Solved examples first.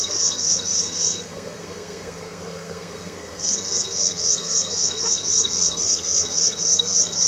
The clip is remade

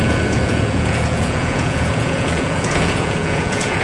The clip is remade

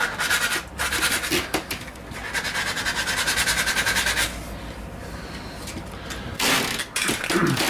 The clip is recorded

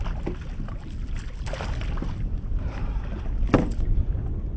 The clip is recorded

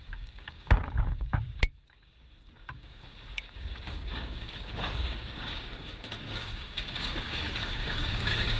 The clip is remade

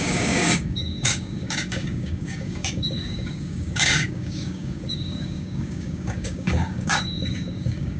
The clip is remade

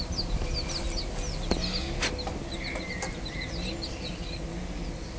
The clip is recorded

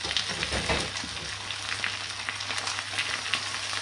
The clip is recorded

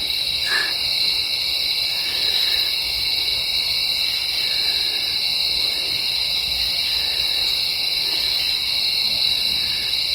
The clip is recorded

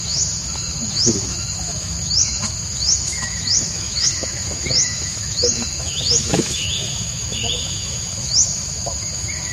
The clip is remade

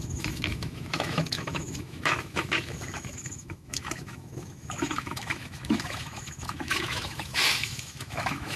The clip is remade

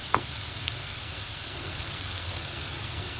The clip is remade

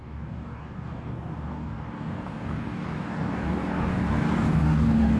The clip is remade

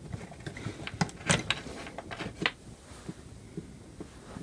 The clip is recorded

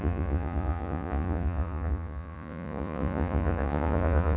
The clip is remade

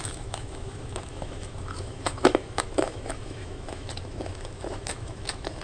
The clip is remade